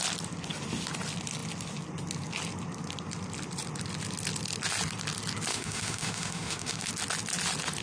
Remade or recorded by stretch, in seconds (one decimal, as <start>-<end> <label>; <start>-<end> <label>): 0.0-5.5 recorded; 5.5-6.9 remade; 6.9-7.8 recorded